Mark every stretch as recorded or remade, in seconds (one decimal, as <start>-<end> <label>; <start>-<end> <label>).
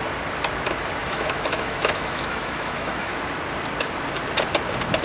0.0-1.0 recorded; 1.0-3.1 remade; 3.1-5.0 recorded